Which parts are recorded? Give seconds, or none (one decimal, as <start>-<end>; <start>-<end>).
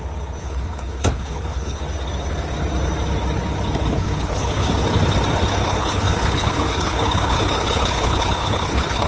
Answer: 0.0-0.4; 1.8-3.9; 4.7-5.6